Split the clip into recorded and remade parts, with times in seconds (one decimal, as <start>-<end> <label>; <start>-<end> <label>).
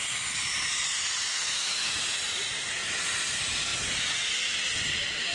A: 0.0-1.3 recorded; 1.3-2.0 remade; 2.0-5.3 recorded